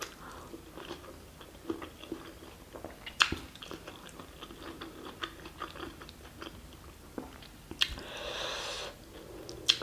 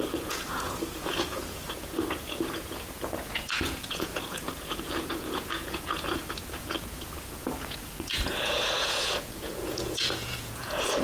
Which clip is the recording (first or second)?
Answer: first